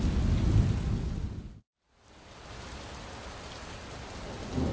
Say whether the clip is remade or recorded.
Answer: recorded